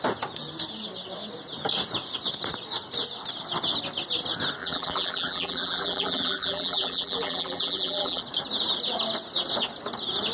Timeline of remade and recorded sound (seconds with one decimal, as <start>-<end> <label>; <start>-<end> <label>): 0.0-4.6 recorded; 4.6-8.2 remade; 8.2-10.3 recorded